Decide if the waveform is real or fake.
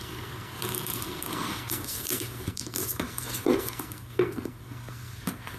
fake